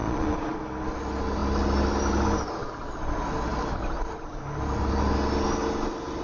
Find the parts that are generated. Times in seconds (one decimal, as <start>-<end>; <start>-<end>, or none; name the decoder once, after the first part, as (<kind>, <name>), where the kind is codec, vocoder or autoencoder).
0.0-0.6 (vocoder, Vocos)